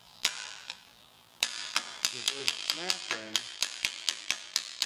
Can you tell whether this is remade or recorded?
remade